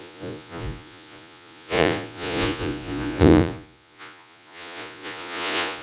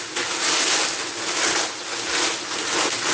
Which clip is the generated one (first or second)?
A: first